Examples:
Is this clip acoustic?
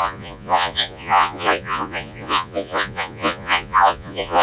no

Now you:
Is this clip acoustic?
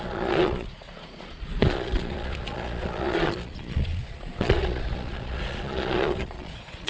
no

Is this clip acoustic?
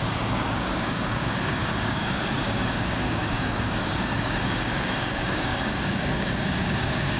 no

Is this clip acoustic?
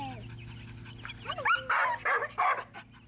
yes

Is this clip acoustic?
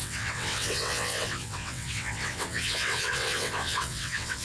no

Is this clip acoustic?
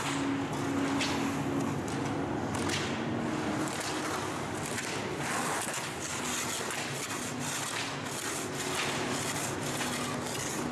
yes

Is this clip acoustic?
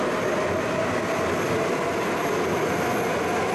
yes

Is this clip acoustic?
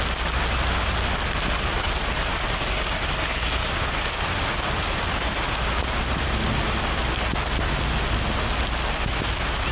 yes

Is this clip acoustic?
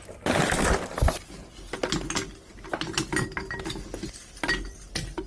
yes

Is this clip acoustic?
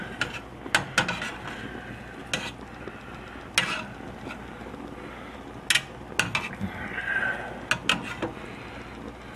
yes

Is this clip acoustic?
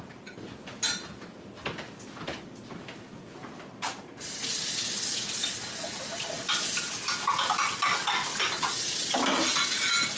yes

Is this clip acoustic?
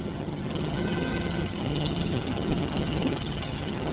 no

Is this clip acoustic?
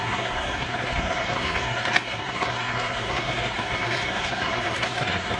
no